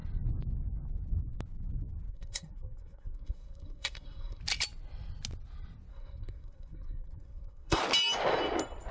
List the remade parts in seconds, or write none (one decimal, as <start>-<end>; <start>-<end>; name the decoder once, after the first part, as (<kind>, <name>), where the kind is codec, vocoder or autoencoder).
2.1-4.4 (codec, SNAC); 5.9-7.8